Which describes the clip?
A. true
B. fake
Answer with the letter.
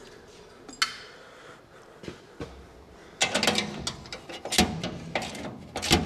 A